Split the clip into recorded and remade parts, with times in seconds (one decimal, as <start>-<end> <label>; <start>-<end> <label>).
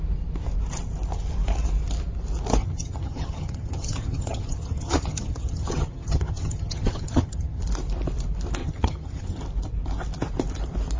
0.0-2.6 recorded; 2.6-7.6 remade; 7.6-8.6 recorded; 8.6-9.4 remade; 9.4-11.0 recorded